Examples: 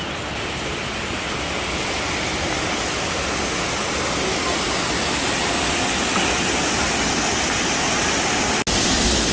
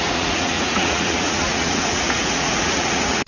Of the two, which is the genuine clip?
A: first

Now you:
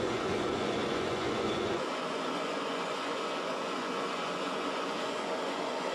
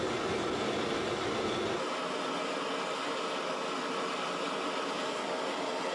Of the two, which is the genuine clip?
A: second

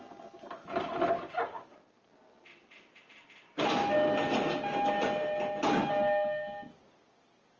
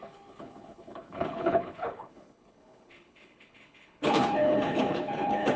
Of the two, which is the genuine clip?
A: first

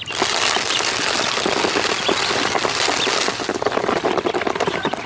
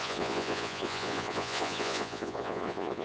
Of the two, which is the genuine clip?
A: first